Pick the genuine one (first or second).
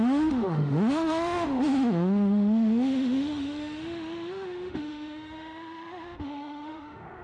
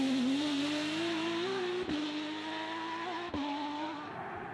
second